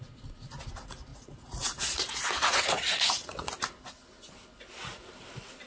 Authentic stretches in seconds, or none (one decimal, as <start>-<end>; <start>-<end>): 0.0-1.1; 3.5-5.7